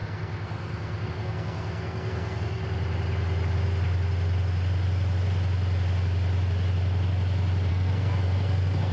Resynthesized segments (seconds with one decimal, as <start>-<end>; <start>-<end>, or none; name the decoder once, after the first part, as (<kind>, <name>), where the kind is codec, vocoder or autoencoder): 0.0-2.6 (codec, SNAC); 7.7-8.9